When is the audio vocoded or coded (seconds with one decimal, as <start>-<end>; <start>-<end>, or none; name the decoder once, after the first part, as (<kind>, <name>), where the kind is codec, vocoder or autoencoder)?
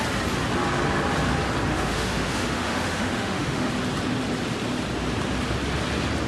1.7-3.7 (autoencoder, DAC-VAE)